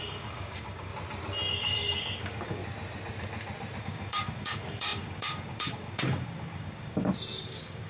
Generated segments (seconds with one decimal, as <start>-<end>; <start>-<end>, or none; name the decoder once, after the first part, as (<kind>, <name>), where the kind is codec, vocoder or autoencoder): 0.0-0.9 (codec, DAC); 1.5-2.6; 3.8-7.9